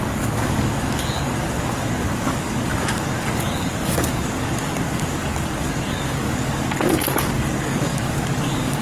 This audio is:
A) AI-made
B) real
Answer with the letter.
A